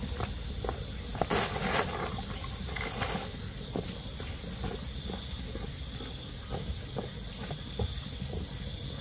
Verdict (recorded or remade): recorded